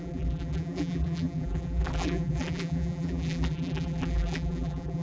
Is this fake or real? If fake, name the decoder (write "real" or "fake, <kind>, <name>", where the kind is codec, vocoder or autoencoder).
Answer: fake, vocoder, BigVGAN v2